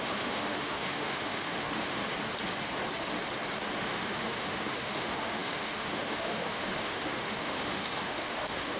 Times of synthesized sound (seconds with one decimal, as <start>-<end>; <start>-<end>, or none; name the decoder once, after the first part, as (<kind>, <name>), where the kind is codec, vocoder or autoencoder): 0.0-2.0 (autoencoder, DAC-VAE); 3.8-8.8